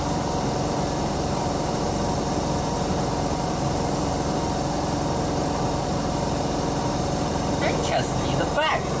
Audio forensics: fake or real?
fake